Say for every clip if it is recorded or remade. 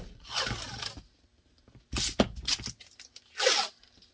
recorded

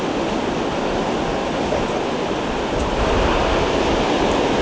recorded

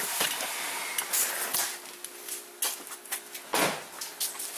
recorded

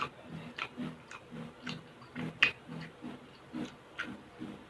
recorded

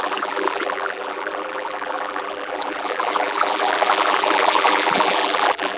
remade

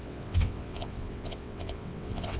remade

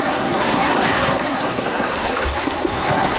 remade